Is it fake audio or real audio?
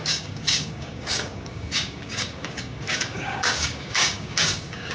fake